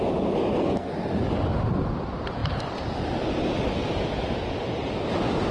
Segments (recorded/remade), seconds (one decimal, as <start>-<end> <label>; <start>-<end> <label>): 0.0-0.5 recorded; 0.5-1.1 remade; 1.1-5.5 recorded